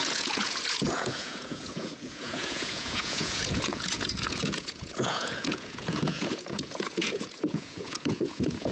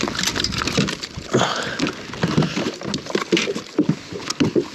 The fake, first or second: first